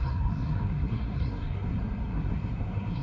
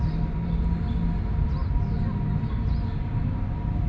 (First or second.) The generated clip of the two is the first